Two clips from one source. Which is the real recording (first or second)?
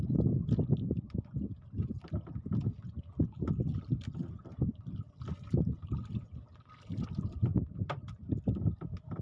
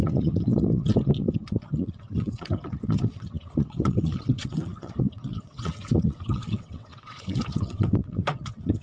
first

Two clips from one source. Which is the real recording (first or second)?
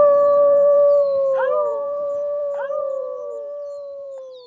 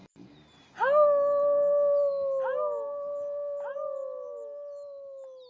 second